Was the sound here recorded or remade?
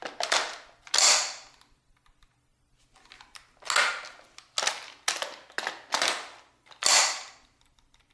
recorded